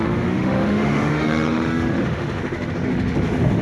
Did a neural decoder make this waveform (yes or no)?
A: yes